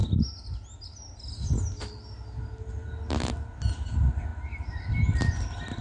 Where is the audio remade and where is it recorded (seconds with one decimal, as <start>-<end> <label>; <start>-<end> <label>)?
0.0-5.8 recorded